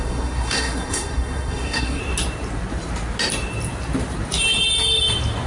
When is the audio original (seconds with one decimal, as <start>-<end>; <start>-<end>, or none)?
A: 2.0-5.5